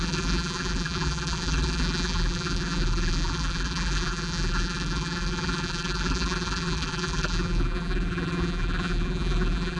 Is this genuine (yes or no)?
no